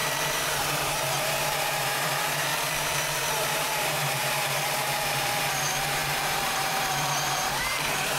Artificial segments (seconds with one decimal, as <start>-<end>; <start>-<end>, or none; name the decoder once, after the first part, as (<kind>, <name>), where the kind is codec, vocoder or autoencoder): 0.0-2.5 (vocoder, BigVGAN v2); 3.3-8.2